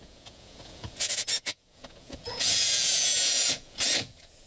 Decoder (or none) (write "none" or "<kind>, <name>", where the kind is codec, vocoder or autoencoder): vocoder, Vocos